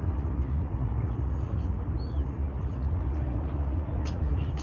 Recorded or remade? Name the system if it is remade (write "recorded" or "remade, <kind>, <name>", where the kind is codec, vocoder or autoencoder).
remade, vocoder, Vocos